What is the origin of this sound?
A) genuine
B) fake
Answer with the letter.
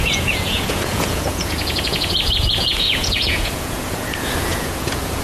B